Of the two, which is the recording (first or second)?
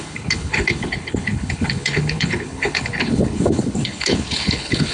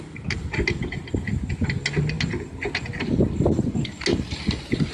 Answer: second